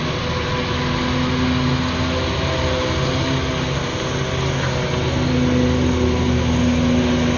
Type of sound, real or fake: real